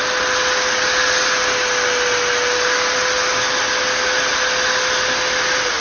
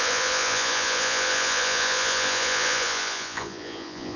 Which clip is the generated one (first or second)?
second